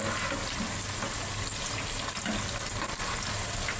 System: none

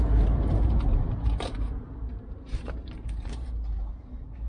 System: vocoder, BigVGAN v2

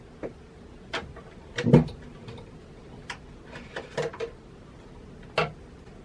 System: none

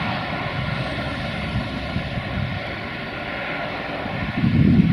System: none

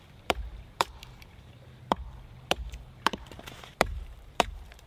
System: vocoder, BigVGAN v2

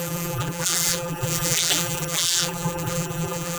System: vocoder, BigVGAN v2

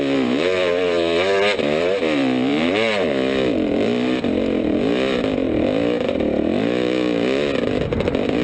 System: vocoder, BigVGAN v2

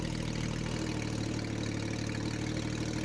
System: none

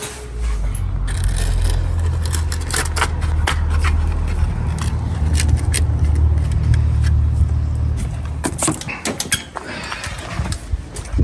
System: none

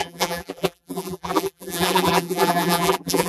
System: vocoder, BigVGAN v2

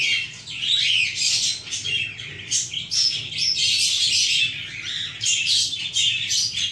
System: none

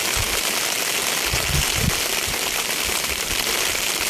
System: none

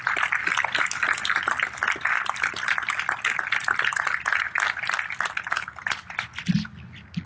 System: none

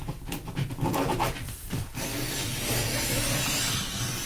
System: none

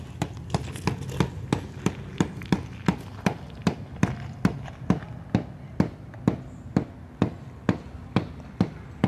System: none